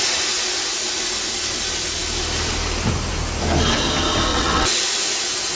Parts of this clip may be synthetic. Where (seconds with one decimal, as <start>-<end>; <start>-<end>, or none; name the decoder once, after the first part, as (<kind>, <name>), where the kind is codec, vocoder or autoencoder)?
4.3-4.8 (vocoder, WaveNeXt)